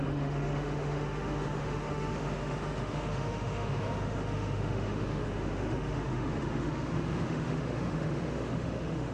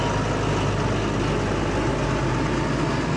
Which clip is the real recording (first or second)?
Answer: second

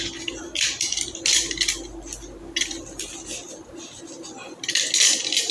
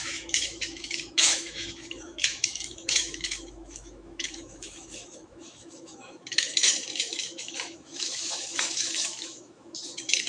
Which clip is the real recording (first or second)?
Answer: first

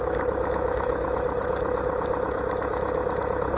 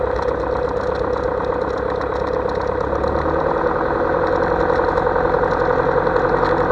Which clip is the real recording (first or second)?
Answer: second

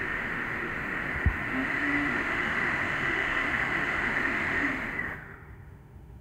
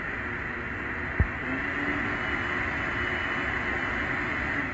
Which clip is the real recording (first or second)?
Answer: second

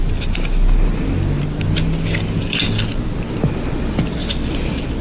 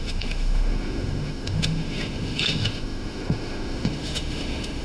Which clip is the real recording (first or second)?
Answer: first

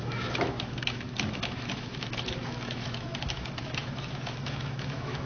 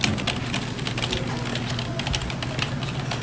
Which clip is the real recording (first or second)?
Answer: second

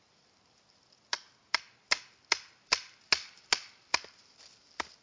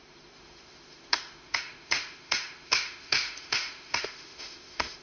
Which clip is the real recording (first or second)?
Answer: first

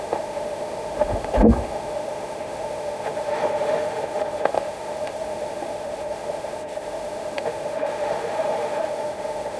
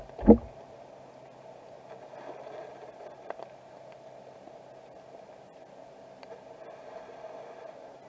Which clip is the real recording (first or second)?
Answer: second